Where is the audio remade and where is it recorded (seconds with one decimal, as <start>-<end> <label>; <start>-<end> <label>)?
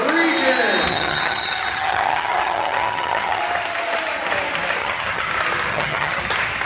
0.0-0.9 recorded; 0.9-3.4 remade; 3.4-4.8 recorded; 4.8-5.3 remade; 5.3-5.7 recorded; 5.7-6.2 remade; 6.2-6.7 recorded